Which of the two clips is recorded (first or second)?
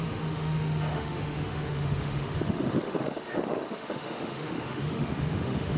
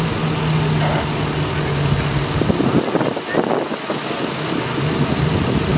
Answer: second